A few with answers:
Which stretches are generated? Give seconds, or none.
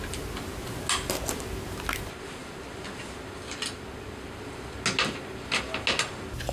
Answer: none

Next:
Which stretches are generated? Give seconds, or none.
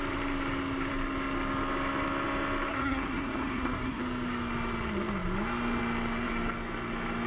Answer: 2.7-4.0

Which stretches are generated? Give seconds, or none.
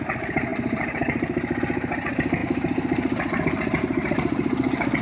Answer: none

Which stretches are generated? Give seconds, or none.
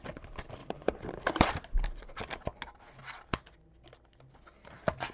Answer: 0.6-1.5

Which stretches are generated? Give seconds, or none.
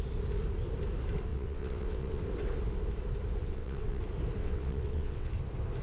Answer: 1.3-2.2; 3.4-4.0; 4.4-5.3